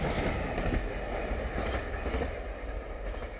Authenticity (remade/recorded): recorded